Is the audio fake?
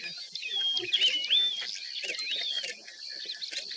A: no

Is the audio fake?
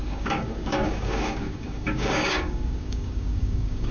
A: yes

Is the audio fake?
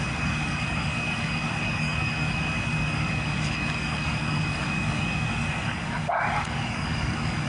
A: yes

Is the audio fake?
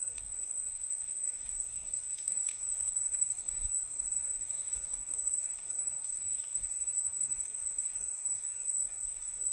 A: yes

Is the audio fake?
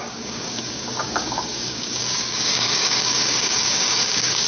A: yes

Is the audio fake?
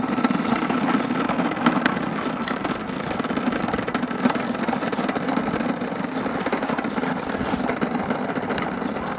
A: no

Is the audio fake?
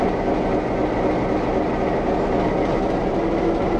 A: no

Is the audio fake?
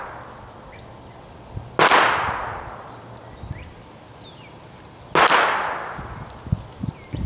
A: no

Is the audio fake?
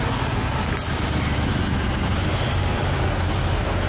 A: no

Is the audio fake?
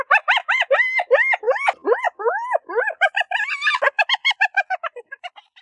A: no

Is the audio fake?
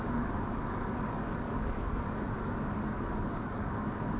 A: yes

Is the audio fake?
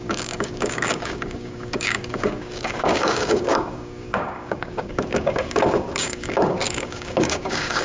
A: yes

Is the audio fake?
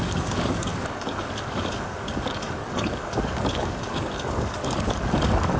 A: yes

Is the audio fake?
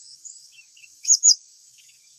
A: yes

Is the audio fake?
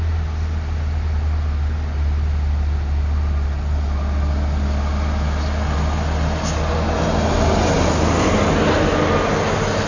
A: no